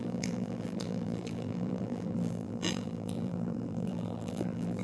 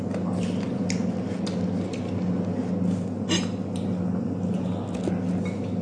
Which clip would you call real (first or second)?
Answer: second